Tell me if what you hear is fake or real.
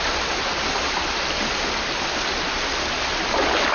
real